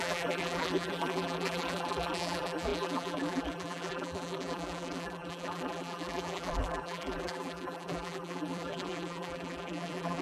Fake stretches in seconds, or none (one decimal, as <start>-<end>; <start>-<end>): 0.0-10.2